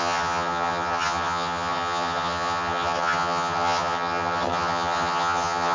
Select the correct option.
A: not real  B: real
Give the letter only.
A